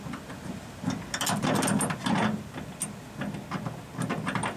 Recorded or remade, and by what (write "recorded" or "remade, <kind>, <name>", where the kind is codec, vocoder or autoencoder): recorded